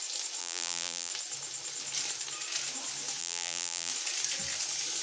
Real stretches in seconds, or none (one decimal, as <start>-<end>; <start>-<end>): 0.0-0.4; 1.1-3.2; 3.9-5.0